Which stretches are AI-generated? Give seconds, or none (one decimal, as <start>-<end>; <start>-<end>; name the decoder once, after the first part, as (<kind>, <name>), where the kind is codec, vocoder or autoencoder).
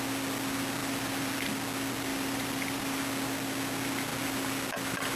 0.8-1.5 (vocoder, BigVGAN v2); 2.1-3.0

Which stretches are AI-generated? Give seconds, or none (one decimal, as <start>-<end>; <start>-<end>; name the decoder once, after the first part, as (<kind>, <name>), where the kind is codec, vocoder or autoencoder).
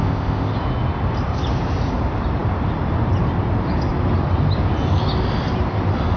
0.0-0.5 (codec, ZipCodec)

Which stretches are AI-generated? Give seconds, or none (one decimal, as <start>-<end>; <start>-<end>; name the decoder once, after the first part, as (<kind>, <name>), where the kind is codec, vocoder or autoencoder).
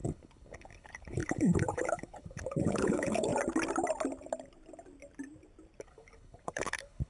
0.0-3.3 (codec, HILCodec); 5.8-7.1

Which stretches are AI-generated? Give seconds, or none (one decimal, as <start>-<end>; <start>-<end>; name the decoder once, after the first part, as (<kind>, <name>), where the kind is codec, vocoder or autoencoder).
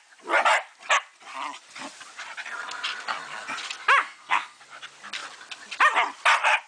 4.0-4.6 (codec, SNAC)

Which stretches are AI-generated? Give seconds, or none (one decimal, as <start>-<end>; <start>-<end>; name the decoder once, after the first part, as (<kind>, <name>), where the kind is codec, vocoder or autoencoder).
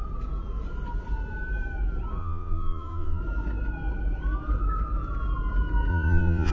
2.2-3.2 (vocoder, Vocos); 5.9-6.5